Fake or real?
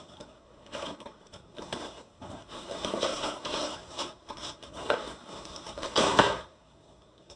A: fake